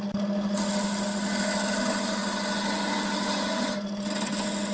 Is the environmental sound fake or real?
real